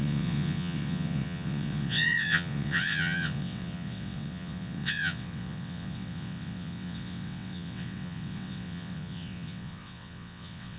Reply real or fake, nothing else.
fake